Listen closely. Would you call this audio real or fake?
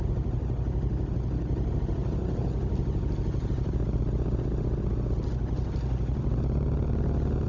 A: real